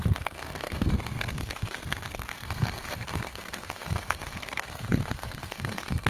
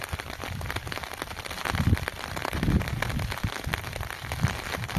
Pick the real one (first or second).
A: second